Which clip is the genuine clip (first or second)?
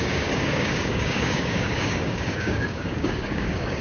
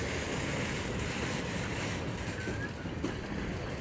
second